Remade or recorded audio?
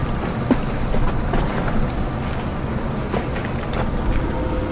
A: recorded